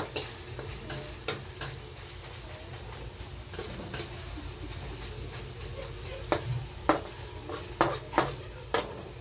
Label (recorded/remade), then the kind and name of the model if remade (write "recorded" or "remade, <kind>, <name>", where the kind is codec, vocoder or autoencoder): recorded